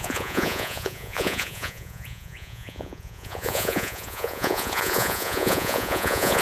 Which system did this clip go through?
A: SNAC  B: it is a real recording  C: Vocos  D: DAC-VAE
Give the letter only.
C